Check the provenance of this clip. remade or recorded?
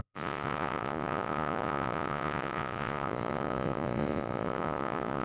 remade